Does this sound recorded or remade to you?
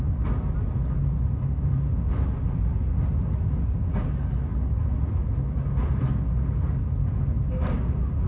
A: recorded